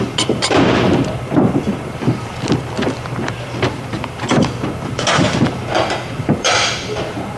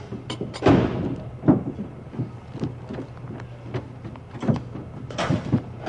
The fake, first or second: first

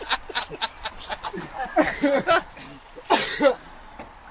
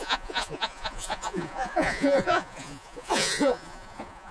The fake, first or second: second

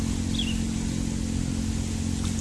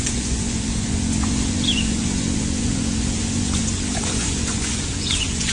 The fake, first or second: second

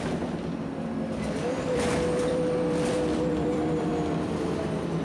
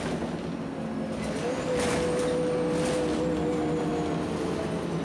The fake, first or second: first